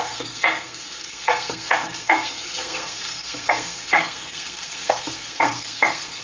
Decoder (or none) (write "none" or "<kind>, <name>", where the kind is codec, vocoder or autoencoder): codec, SNAC